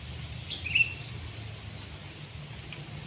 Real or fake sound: real